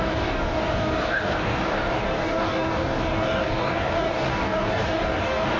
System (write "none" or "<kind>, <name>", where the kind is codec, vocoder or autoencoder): codec, DAC